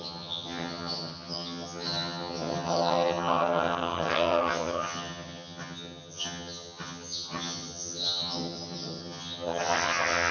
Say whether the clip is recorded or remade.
remade